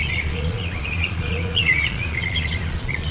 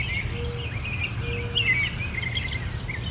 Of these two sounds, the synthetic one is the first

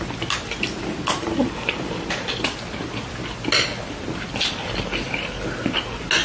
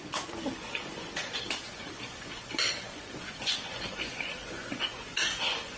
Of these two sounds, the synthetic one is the second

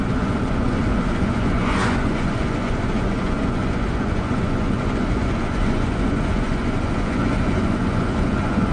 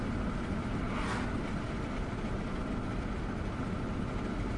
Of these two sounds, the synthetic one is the first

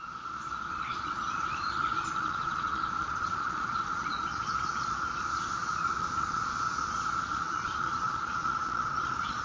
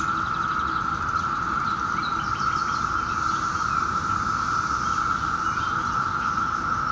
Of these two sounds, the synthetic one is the first